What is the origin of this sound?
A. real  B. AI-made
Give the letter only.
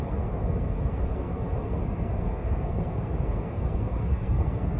B